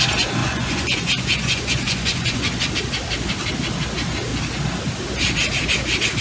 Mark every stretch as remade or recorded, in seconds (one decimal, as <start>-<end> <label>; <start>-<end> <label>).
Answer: 0.0-0.4 recorded; 0.4-2.7 remade; 2.7-6.2 recorded